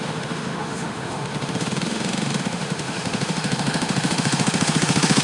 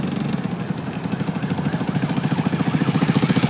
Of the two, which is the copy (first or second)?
first